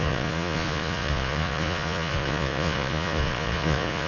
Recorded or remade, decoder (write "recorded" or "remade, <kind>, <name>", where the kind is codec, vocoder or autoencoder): remade, vocoder, Vocos